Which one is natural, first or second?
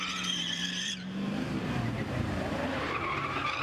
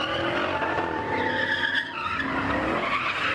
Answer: second